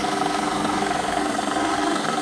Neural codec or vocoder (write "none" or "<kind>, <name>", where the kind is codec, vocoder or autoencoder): codec, SNAC